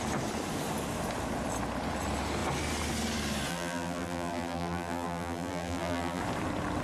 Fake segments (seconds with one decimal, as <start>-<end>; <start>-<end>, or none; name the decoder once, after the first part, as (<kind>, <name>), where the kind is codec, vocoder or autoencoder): 3.5-6.2 (vocoder, BigVGAN v2)